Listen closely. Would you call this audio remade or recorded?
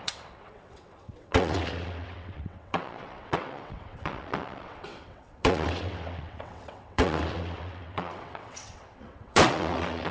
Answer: remade